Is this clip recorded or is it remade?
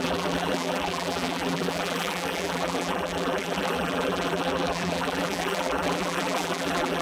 remade